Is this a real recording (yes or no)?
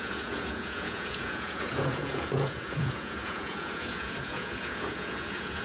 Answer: no